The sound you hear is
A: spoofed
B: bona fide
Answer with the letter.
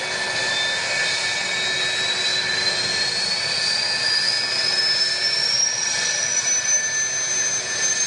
B